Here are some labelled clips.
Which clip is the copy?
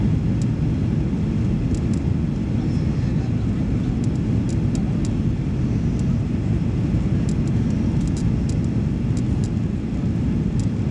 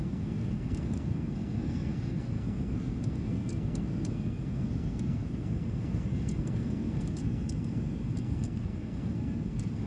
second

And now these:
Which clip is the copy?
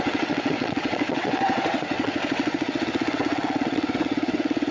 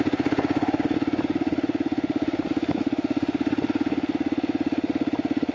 first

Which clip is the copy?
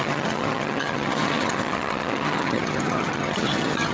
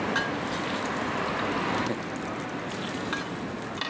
first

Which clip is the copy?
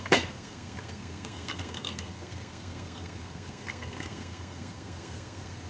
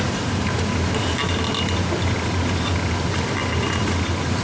first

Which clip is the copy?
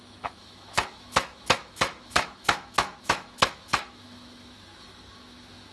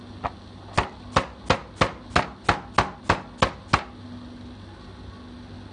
first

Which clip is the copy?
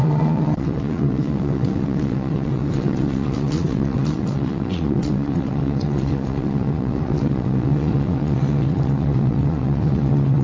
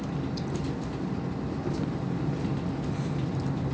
first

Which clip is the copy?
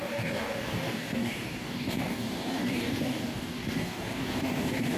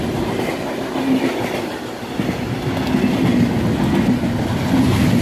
first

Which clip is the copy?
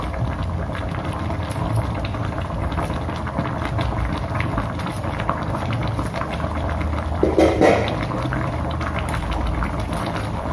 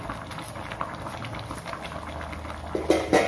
first